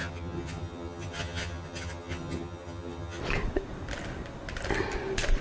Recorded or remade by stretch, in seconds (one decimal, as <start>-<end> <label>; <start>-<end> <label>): 0.0-3.2 remade; 3.2-5.4 recorded